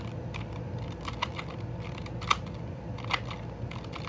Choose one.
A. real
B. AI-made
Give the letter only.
A